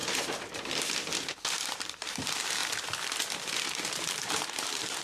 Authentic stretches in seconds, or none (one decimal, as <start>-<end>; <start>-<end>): 0.0-1.5; 2.6-4.0